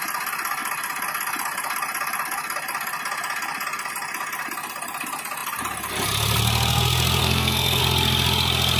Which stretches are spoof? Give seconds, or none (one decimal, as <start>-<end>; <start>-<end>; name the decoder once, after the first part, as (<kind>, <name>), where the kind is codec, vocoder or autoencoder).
7.2-7.8 (codec, SNAC)